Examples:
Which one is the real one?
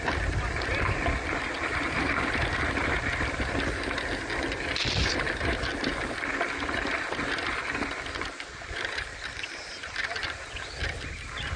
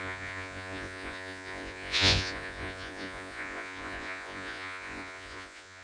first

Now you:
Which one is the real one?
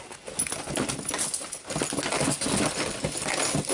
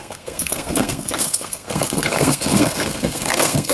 first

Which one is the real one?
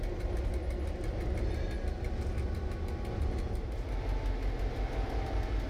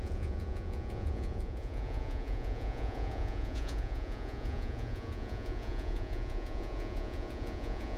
first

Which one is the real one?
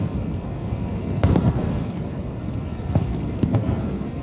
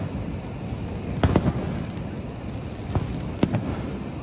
second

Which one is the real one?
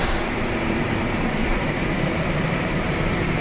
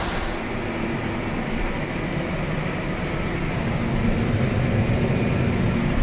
second